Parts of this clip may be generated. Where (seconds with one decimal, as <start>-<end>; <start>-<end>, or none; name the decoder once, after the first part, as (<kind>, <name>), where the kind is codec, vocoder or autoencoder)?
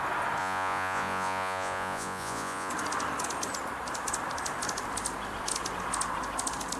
0.4-2.7 (vocoder, Vocos)